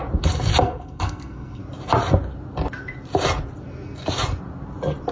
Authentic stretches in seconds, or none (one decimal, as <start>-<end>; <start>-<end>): 0.0-0.6; 1.6-5.1